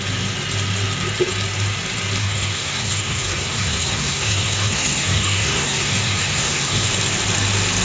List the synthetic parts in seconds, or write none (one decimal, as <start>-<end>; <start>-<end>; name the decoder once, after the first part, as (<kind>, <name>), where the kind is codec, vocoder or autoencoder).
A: 2.2-6.9 (codec, SNAC)